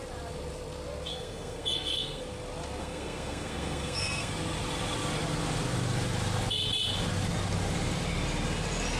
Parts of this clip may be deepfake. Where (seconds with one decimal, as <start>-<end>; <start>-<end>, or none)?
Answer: 1.1-2.2; 2.8-4.3